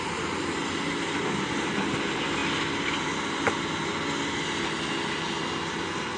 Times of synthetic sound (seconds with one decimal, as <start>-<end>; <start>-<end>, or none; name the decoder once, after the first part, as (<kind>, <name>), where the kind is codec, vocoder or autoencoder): none